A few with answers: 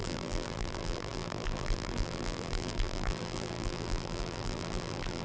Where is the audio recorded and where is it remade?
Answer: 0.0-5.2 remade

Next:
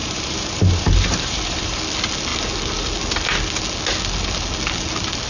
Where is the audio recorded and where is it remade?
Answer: 0.0-1.8 remade; 1.8-5.3 recorded